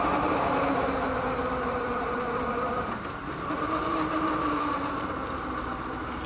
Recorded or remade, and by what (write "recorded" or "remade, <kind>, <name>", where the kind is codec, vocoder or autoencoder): remade, vocoder, BigVGAN v2